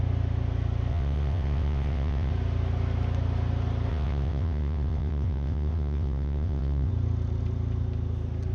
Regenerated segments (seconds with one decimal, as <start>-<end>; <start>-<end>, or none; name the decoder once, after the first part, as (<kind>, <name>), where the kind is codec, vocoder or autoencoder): 0.9-2.3 (vocoder, WaveNeXt); 3.9-6.9